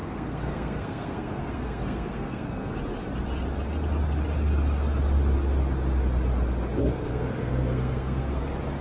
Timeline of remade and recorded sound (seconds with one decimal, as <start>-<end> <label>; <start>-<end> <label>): 0.0-2.7 remade; 2.7-6.8 recorded; 6.8-8.4 remade; 8.4-8.8 recorded